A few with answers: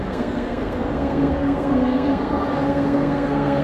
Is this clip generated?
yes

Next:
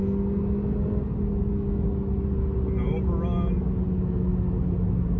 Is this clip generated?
no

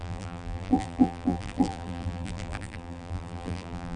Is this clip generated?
yes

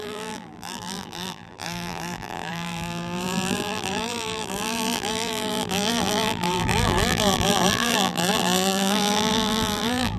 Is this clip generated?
yes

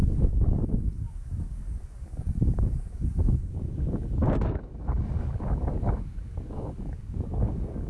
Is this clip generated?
yes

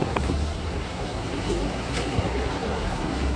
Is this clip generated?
yes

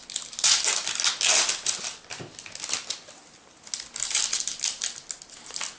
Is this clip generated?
no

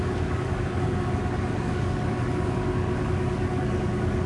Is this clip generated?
yes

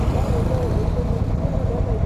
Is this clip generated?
no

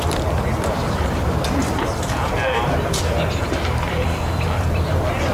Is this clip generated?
yes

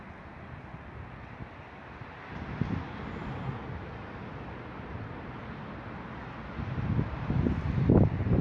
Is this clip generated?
no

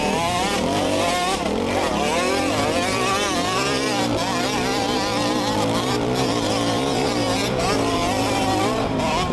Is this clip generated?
no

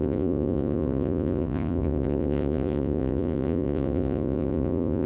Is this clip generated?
yes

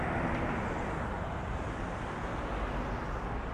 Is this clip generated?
no